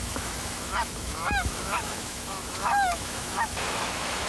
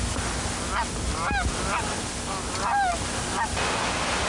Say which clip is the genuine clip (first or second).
second